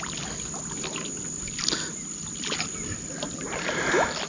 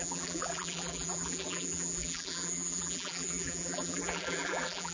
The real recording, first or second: first